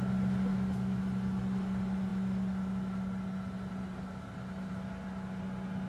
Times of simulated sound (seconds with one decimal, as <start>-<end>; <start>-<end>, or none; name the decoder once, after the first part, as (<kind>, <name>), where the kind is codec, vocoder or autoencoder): 0.5-1.0 (autoencoder, DAC-VAE)